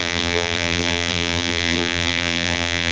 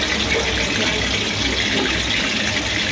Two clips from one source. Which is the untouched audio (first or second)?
second